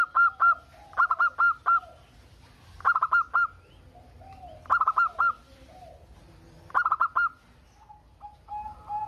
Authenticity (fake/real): real